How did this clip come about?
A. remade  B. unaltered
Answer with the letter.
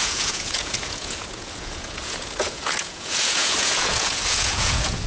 A